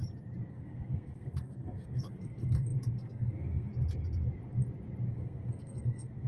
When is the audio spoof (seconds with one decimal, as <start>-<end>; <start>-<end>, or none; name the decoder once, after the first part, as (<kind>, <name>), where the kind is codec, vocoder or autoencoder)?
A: 0.5-3.7 (codec, SNAC); 5.1-6.3